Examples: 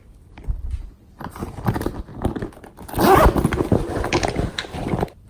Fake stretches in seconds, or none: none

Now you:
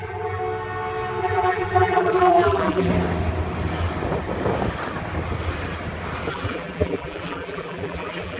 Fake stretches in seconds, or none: 0.0-0.4 (vocoder, BigVGAN v2); 1.2-2.9; 6.3-8.4